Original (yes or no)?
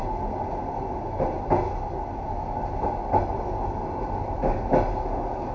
yes